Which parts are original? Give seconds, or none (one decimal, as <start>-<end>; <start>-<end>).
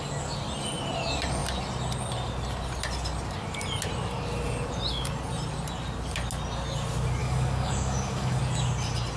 0.0-7.2; 8.4-9.2